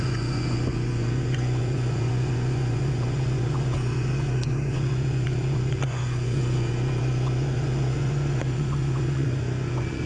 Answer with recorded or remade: remade